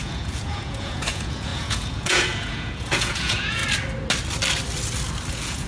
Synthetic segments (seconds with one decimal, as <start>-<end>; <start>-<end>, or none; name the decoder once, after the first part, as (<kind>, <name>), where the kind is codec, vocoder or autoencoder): 0.0-3.6 (vocoder, Vocos); 5.3-5.7